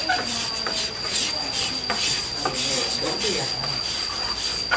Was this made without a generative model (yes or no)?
yes